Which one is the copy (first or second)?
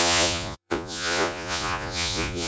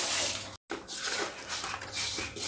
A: first